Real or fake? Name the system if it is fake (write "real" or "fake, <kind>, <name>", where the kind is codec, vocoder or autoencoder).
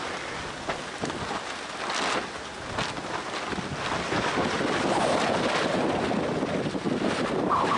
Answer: real